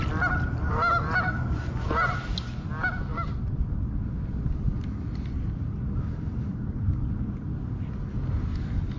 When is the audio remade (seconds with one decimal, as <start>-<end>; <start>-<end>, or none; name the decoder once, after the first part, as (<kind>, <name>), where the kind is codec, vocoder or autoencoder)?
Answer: none